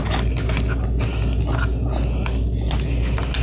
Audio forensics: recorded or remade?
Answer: recorded